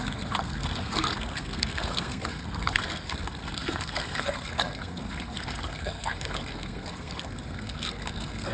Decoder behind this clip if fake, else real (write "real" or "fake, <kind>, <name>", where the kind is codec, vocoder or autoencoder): fake, codec, SNAC